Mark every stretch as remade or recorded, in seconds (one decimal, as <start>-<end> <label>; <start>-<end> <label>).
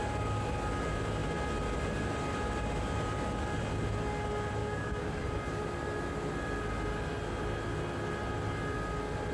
0.0-4.6 recorded; 4.6-5.2 remade; 5.2-9.3 recorded